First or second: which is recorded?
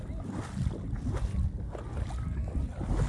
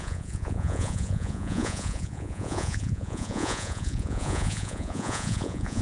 first